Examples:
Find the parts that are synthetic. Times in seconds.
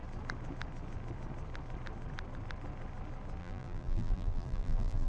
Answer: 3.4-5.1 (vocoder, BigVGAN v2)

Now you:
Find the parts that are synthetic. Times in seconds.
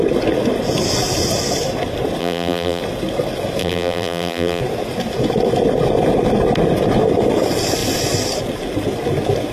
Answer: 2.2-2.8 (vocoder, BigVGAN v2); 3.6-4.6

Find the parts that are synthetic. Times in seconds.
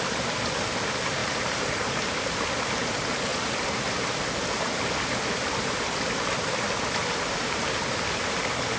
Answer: 1.2-2.5 (vocoder, BigVGAN v2); 3.3-4.2; 7.0-7.8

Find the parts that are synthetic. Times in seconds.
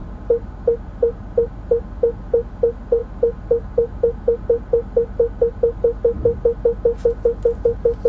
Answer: none